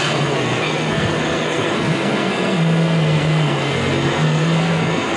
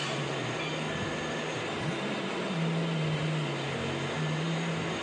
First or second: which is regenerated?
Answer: first